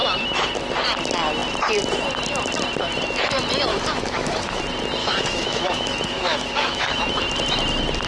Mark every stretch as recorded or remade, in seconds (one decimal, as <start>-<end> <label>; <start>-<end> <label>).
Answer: 0.0-3.7 recorded; 3.7-4.6 remade; 4.6-5.0 recorded; 5.0-7.0 remade; 7.0-8.1 recorded